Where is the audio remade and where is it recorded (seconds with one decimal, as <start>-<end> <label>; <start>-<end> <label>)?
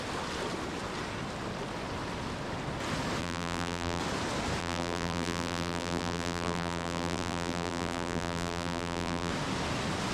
0.0-3.2 recorded; 3.2-4.0 remade; 4.0-4.6 recorded; 4.6-9.3 remade; 9.3-10.1 recorded